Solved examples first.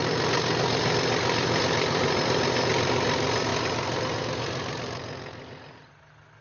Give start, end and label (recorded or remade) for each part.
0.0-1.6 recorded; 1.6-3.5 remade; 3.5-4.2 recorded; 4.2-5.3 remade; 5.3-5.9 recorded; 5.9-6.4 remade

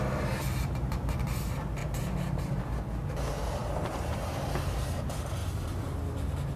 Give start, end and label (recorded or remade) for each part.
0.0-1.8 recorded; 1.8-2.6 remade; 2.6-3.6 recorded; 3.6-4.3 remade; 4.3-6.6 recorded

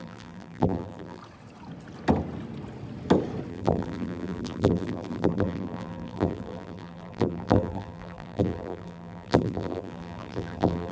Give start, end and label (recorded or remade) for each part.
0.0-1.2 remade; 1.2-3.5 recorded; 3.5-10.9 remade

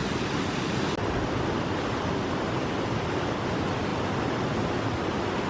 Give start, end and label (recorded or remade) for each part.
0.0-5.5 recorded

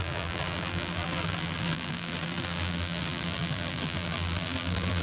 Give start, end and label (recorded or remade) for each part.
0.0-5.0 remade

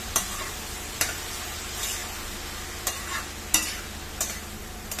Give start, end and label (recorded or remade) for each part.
0.0-2.0 remade; 2.0-4.6 recorded; 4.6-5.0 remade

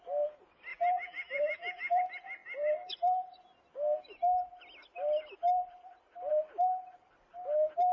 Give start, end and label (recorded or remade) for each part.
0.0-0.7 recorded; 0.7-2.0 remade; 2.0-7.9 recorded

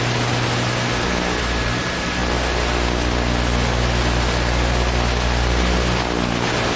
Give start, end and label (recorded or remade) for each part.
0.0-6.8 recorded